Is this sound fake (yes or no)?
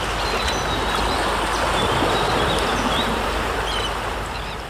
no